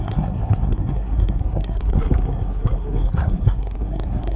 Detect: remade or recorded remade